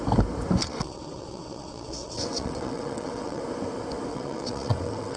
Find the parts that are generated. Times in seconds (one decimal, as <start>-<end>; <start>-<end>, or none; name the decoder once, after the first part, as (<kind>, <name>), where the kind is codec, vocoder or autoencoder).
0.6-3.4 (vocoder, WaveNeXt); 4.1-5.2